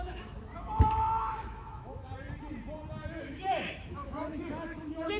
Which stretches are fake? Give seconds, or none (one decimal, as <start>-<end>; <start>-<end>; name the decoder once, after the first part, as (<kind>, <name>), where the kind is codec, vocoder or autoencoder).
0.0-2.1 (autoencoder, DAC-VAE); 3.2-5.2